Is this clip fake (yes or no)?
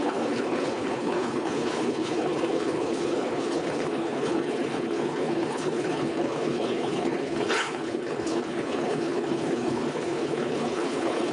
yes